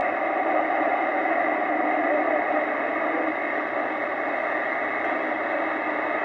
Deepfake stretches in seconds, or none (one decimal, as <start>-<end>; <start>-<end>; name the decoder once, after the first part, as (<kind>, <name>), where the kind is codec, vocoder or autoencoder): none